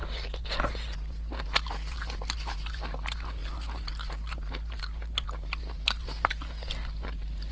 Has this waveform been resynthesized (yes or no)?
no